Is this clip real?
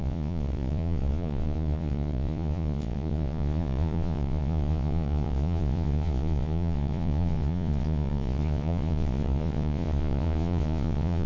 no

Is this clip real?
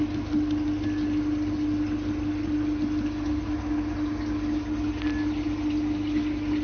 yes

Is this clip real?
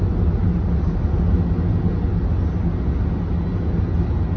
yes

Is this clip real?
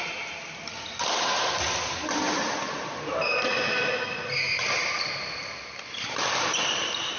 yes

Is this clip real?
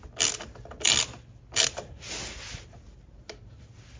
yes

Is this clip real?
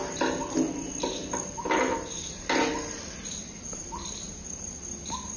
yes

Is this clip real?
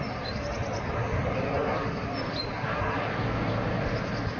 yes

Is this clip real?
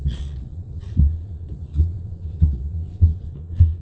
no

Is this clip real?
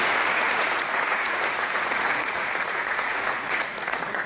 no